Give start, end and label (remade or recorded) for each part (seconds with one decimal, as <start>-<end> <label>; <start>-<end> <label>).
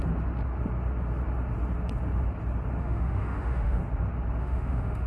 0.0-2.8 recorded; 2.8-3.8 remade; 3.8-4.4 recorded; 4.4-5.1 remade